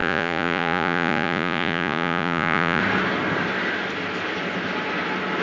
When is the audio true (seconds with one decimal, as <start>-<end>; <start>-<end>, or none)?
2.8-5.4